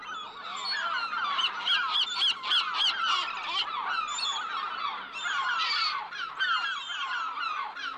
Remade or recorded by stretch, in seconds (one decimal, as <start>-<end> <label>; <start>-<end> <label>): 0.0-8.0 recorded